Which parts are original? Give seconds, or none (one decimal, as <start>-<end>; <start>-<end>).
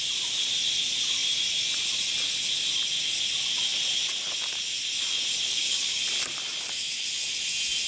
0.0-5.5; 6.0-7.9